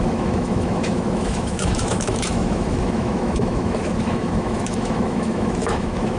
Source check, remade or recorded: remade